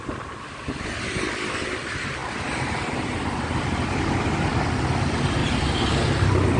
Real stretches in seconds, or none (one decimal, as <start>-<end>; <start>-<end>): 0.0-6.6